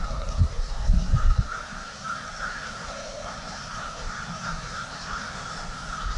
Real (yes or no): no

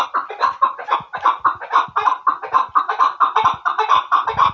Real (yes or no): yes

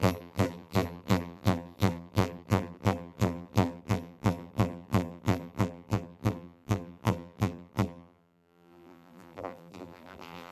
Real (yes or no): no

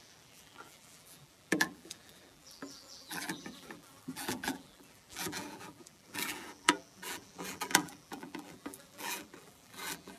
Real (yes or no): no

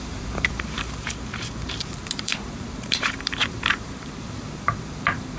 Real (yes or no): no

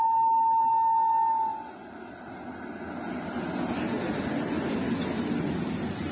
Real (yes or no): yes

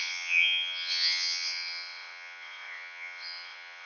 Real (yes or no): no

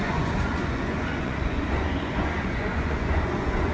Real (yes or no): no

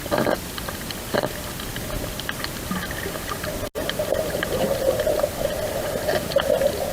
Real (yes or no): yes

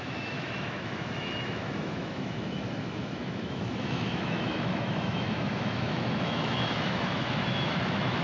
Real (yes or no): no